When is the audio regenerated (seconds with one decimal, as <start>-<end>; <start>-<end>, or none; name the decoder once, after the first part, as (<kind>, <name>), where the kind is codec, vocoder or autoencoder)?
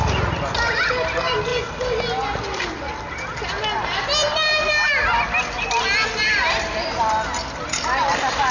none